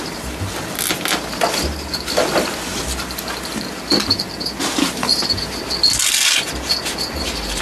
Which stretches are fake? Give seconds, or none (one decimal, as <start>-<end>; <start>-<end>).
none